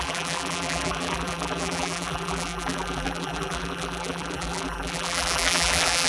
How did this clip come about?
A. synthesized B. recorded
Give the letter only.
A